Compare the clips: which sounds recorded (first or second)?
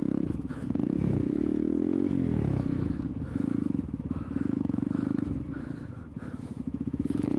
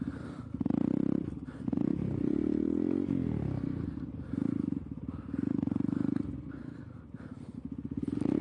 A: second